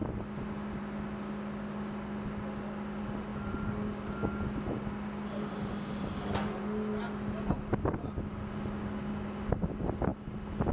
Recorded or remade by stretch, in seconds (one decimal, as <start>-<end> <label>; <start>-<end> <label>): 0.0-10.7 recorded